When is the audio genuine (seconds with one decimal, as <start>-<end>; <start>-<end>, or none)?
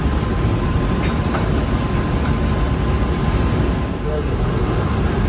1.8-5.3